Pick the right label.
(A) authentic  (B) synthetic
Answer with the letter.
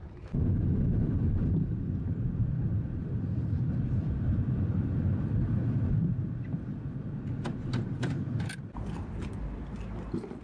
A